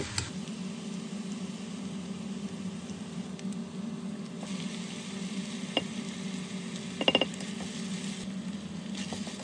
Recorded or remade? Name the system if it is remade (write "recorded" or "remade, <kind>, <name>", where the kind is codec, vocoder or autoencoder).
recorded